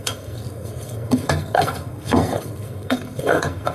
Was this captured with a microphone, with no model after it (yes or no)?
no